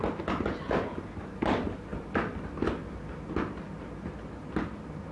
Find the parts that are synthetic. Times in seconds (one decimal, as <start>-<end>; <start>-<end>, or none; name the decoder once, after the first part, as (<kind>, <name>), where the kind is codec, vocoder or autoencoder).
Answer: none